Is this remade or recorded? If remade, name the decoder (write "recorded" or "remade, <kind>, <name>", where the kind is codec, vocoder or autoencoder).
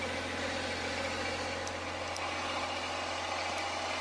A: recorded